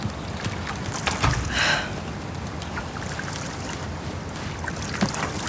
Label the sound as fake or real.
real